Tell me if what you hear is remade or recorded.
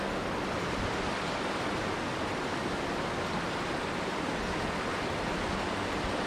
recorded